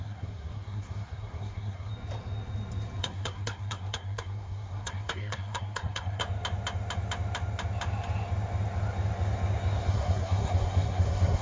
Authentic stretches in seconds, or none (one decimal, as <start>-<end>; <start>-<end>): 1.9-3.0; 6.2-9.9